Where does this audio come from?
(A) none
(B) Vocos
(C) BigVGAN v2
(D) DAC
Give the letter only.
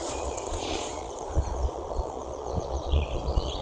B